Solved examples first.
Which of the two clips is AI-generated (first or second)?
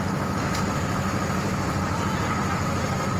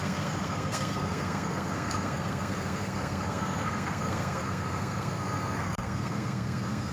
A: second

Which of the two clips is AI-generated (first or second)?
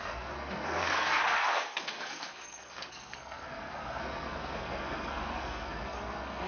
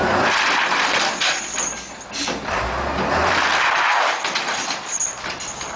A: first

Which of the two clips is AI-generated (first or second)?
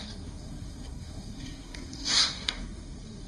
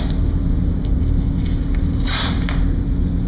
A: first